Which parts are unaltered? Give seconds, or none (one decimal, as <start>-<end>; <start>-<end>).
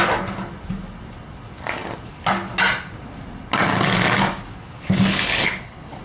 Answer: 0.0-5.1